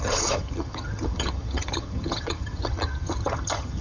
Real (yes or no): no